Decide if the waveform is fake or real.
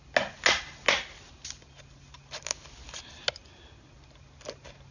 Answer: real